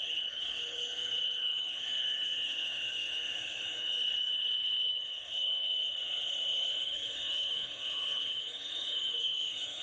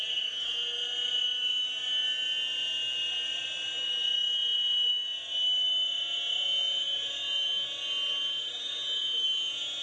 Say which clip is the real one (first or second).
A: second